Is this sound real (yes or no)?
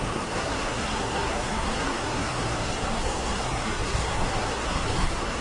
no